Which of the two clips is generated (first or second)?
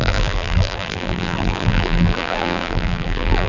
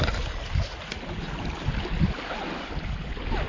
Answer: first